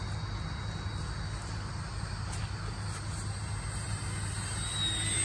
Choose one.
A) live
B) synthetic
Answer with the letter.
A